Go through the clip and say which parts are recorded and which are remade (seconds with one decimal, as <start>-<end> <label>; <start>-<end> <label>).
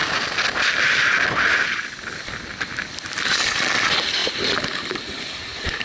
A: 0.0-5.8 recorded